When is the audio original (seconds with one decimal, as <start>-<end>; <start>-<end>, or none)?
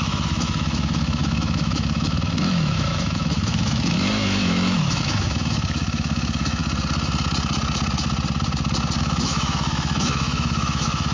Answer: 6.6-9.0